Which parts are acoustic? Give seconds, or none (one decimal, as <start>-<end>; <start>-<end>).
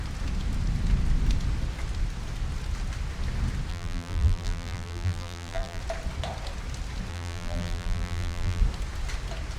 0.0-3.7; 5.8-7.1; 8.6-9.6